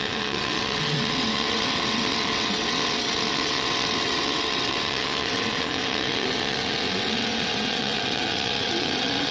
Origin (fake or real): fake